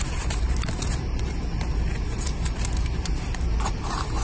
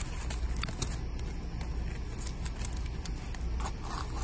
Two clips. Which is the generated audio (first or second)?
first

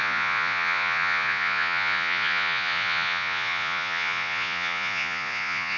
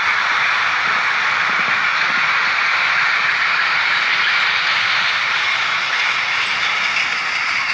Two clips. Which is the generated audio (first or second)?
first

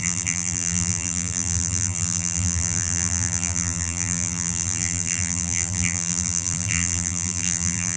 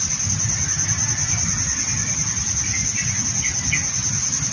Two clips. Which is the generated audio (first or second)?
first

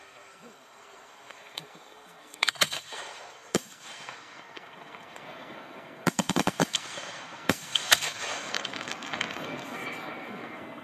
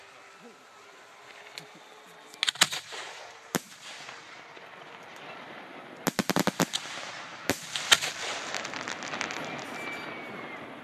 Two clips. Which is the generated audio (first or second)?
first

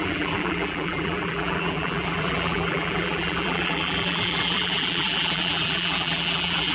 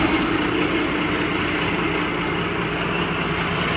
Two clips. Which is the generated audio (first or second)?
first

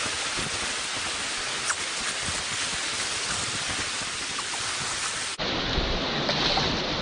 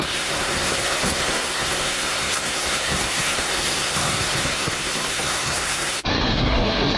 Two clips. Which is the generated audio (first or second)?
second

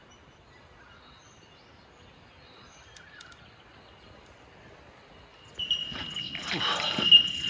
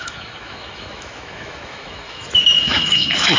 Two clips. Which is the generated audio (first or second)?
second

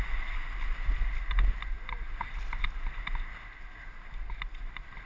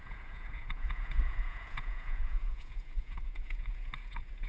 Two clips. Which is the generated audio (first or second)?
second